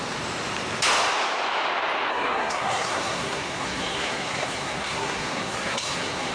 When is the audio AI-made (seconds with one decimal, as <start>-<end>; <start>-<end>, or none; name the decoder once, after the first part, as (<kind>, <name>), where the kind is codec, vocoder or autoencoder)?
2.1-6.3 (codec, SNAC)